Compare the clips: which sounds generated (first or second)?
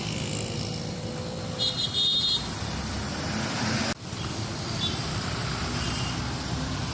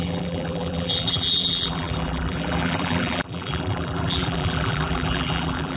second